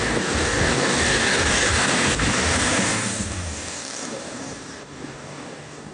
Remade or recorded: remade